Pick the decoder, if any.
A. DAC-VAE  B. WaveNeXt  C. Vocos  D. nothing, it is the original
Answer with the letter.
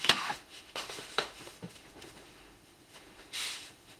A